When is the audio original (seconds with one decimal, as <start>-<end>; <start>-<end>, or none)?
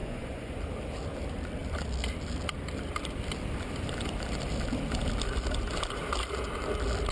0.6-7.1